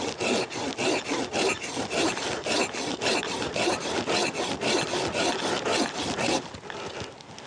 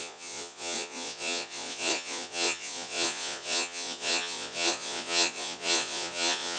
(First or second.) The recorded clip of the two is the first